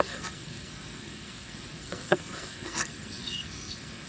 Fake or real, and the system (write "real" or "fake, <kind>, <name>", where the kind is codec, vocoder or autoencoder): fake, codec, SNAC